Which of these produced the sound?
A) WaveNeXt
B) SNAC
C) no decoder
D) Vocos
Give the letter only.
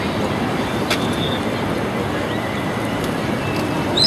C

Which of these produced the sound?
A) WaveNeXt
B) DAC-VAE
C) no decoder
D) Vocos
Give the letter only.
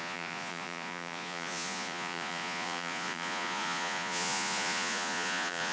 D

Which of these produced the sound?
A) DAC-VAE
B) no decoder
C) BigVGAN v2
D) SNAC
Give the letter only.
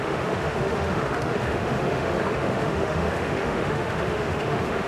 A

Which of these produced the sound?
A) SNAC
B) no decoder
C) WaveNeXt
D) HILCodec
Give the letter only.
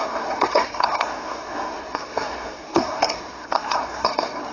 A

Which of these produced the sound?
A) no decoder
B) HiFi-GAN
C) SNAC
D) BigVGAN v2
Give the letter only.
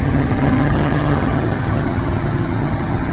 B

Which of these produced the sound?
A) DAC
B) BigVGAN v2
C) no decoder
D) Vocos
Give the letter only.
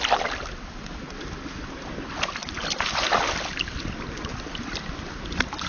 C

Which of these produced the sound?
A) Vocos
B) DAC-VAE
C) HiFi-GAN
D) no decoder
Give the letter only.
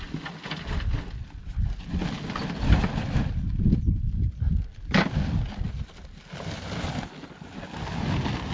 D